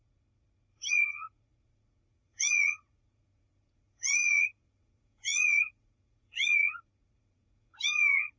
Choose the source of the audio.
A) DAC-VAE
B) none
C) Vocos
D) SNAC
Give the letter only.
C